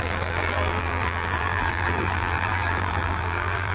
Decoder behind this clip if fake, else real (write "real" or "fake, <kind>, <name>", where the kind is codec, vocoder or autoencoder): fake, vocoder, BigVGAN v2